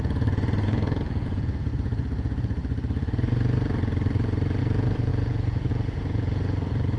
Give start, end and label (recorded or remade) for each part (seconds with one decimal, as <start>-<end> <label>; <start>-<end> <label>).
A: 0.0-2.6 remade; 2.6-4.6 recorded; 4.6-7.0 remade